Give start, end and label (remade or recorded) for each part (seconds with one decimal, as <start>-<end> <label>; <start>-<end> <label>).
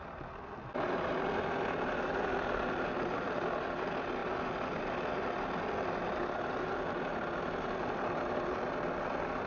0.0-9.5 recorded